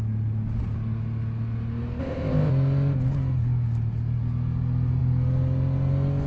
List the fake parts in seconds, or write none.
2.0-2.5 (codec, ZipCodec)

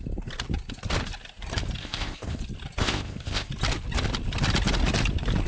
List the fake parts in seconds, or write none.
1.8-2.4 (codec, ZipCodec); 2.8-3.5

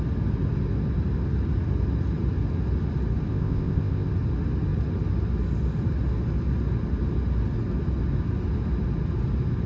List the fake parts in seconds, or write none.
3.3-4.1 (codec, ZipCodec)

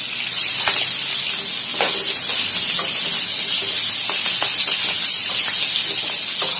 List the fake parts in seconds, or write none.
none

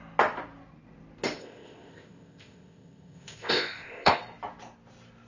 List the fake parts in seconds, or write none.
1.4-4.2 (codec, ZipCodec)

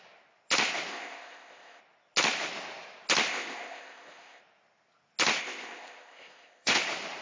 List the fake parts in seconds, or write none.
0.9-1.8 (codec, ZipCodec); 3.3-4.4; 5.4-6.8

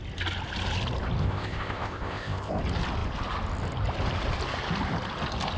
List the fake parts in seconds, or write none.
1.2-2.6 (codec, ZipCodec)